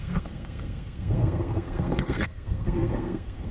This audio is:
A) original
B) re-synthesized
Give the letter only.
B